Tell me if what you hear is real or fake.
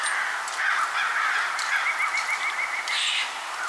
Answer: real